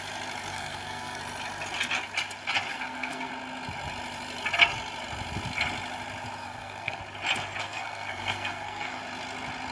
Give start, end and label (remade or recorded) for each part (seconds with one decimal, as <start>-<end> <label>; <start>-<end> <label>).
0.0-0.5 recorded; 0.5-1.2 remade; 1.2-2.7 recorded; 2.7-3.3 remade; 3.3-6.4 recorded; 6.4-7.0 remade; 7.0-7.6 recorded; 7.6-9.0 remade; 9.0-9.7 recorded